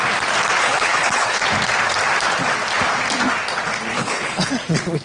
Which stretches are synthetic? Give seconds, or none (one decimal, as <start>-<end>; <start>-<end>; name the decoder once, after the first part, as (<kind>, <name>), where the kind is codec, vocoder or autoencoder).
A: 0.6-1.4 (codec, HILCodec); 3.9-4.5